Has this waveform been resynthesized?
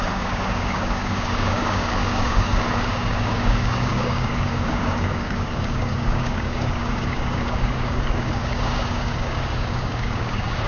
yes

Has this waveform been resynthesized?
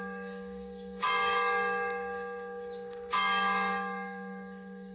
yes